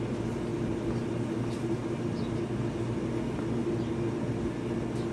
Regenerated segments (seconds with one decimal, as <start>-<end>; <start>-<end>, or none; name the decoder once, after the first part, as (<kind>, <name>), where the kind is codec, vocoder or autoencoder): none